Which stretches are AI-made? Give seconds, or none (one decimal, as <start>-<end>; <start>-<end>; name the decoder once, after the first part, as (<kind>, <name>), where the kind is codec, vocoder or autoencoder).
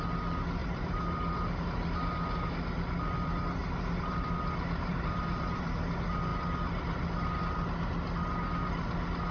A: 0.6-1.5 (vocoder, BigVGAN v2); 3.6-4.4; 4.9-5.6